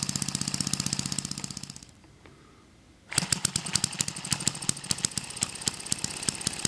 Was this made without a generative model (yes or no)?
yes